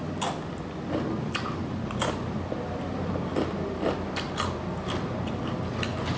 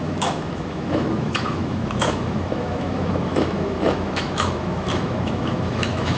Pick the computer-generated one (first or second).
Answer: second